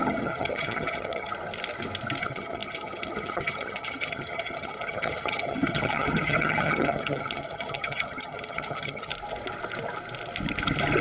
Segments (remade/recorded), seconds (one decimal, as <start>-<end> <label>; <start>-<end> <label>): 0.0-1.3 remade; 1.3-2.2 recorded; 2.2-9.1 remade; 9.1-11.0 recorded